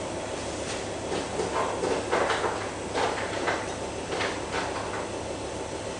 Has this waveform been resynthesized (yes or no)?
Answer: no